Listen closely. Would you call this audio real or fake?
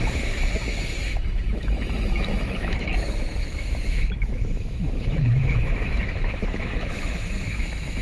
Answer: fake